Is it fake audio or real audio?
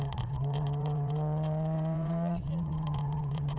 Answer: fake